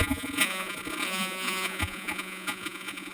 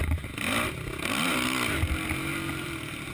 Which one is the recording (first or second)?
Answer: second